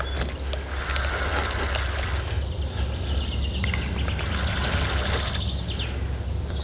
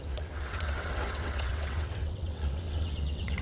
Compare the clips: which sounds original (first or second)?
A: first